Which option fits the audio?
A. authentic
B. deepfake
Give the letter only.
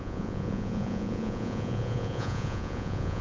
B